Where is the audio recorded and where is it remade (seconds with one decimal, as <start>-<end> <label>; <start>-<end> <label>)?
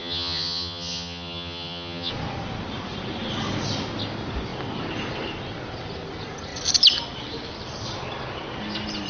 0.0-2.1 remade; 2.1-9.1 recorded